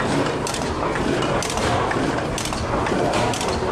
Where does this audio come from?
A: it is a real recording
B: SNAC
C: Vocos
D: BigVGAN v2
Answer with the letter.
A